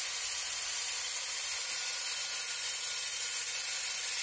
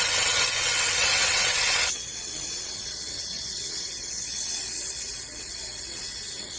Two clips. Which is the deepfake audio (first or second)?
second